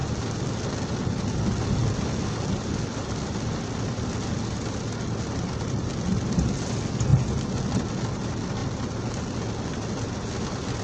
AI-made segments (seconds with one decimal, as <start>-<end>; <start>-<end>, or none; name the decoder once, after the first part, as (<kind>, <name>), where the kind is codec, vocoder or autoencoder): none